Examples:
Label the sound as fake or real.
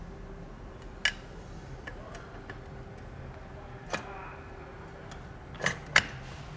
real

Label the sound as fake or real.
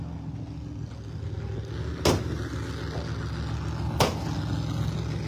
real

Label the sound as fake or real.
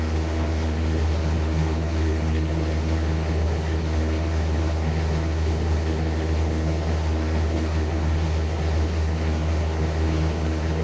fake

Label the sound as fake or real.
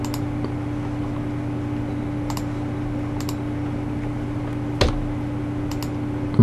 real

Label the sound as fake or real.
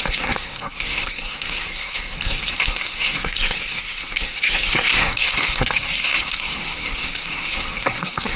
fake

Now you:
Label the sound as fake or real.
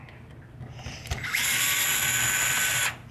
real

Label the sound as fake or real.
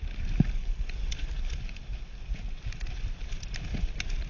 real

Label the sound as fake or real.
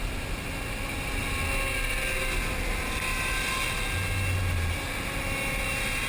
real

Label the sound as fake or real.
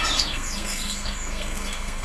fake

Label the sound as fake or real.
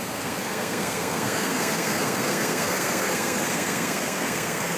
fake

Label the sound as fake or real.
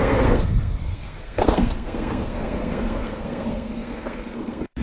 fake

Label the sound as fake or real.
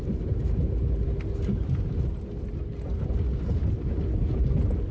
real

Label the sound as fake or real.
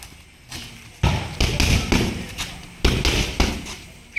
real